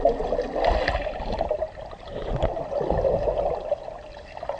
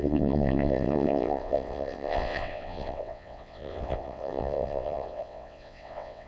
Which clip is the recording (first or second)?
first